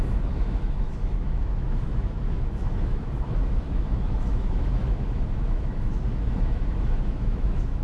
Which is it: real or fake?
fake